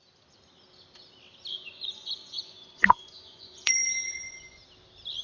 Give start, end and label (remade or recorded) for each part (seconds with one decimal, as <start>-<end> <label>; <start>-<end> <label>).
0.0-1.5 recorded; 1.5-4.6 remade; 4.6-5.2 recorded